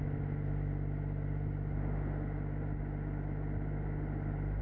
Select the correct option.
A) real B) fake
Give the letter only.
A